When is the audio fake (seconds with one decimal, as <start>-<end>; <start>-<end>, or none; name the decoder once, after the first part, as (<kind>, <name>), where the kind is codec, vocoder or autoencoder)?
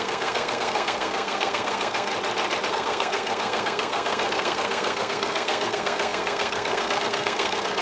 0.0-2.1 (codec, SNAC); 2.7-7.8